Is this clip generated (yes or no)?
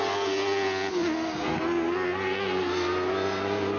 no